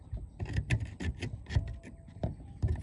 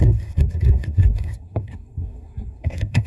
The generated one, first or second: second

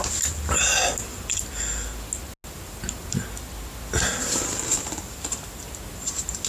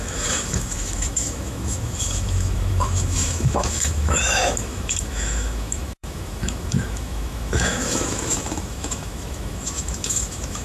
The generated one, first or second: second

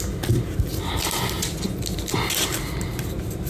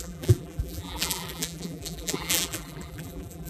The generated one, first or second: second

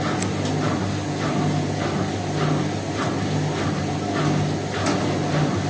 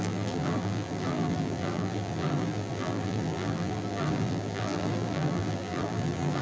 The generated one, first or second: second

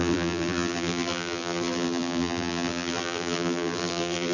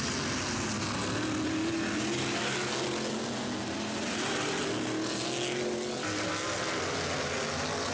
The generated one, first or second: first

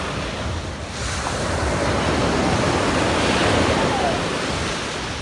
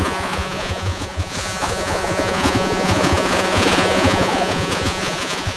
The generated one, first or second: second